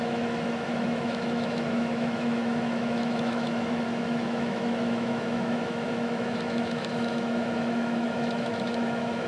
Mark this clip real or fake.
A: fake